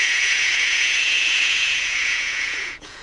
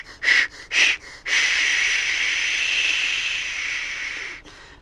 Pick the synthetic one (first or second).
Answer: first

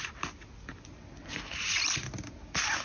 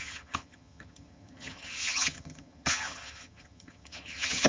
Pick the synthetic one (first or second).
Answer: second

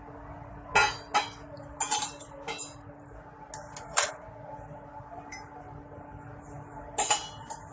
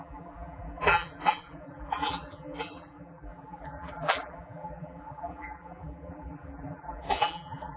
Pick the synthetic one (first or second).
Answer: second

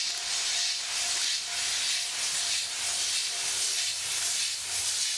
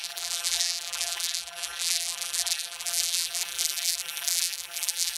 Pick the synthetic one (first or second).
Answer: second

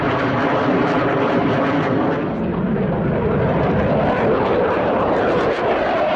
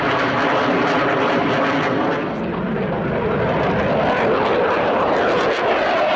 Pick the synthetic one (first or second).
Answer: first